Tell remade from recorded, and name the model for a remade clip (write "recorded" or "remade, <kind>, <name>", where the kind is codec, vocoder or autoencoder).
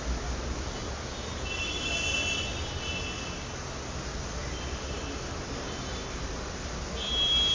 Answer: recorded